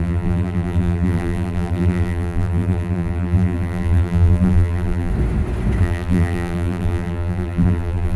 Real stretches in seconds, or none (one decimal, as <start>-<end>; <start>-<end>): 5.1-5.8